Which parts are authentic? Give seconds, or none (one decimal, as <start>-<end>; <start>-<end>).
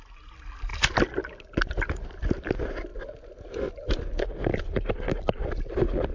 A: 0.0-6.1